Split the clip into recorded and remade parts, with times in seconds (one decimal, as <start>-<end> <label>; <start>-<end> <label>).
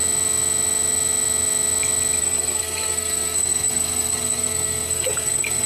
0.0-2.2 recorded; 2.2-5.7 remade